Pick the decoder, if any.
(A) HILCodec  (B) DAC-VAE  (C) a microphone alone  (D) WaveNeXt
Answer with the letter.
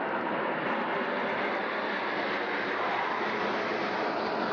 C